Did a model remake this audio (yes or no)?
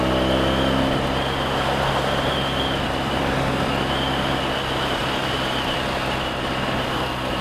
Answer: no